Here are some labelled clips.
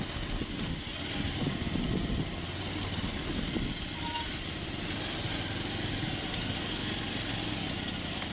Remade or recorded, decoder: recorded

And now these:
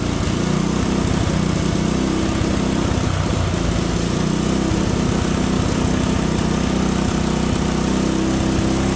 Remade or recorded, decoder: recorded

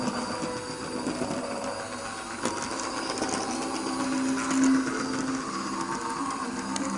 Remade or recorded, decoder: recorded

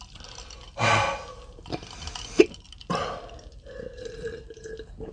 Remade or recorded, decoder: recorded